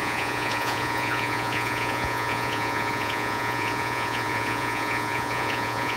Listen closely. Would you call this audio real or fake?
fake